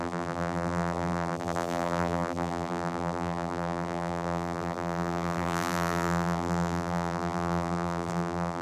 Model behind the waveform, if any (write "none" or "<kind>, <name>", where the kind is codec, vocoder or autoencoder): vocoder, BigVGAN v2